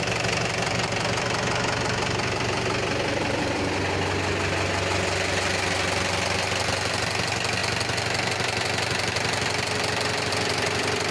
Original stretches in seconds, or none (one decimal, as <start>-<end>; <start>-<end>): 0.0-11.1